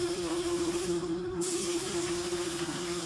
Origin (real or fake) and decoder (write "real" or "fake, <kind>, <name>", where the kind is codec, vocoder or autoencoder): fake, codec, SNAC